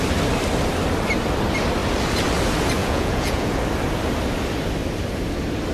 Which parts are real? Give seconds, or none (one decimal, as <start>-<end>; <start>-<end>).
0.0-2.8; 3.6-5.7